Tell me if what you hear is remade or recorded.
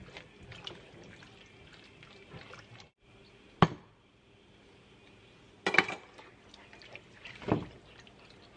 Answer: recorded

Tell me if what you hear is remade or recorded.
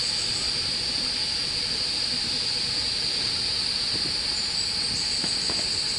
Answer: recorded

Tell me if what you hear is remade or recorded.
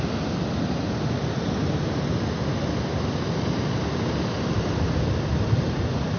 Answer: recorded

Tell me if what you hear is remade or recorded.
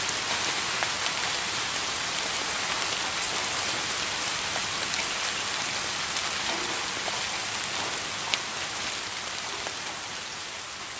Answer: recorded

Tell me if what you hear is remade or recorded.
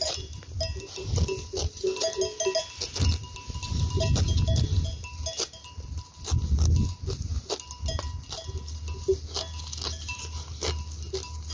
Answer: recorded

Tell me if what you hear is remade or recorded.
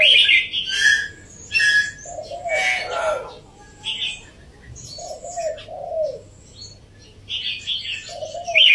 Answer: recorded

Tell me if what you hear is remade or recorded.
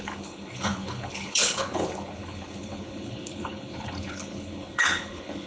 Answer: remade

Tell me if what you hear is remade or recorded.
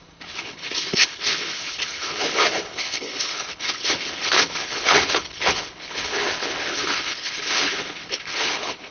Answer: remade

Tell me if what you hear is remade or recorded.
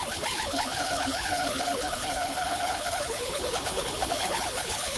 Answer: remade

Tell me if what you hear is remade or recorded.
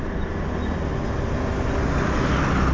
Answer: recorded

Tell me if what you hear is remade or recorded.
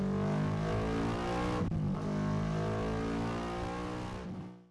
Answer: recorded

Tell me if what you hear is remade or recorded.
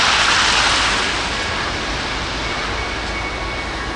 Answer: recorded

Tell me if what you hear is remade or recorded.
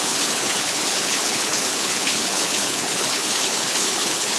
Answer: remade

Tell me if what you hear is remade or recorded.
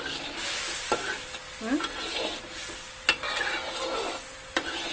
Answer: recorded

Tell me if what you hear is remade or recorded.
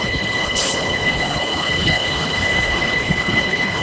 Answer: remade